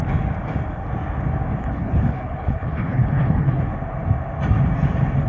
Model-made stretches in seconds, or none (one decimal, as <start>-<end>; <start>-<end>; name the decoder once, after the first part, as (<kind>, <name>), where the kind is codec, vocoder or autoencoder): 1.6-3.6 (codec, HILCodec)